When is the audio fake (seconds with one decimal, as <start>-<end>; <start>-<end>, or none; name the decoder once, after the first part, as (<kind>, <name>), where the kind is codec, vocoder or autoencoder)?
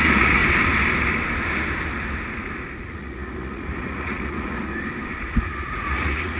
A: 0.0-0.4 (vocoder, Vocos); 2.9-4.7; 5.4-6.4